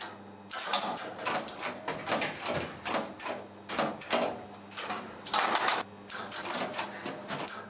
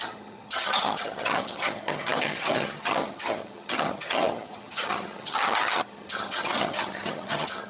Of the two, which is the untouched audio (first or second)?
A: first